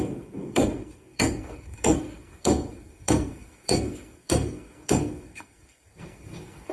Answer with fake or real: fake